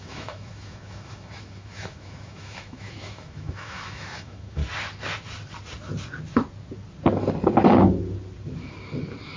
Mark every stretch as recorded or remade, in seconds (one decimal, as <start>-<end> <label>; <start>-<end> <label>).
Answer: 0.0-4.6 remade; 4.6-9.4 recorded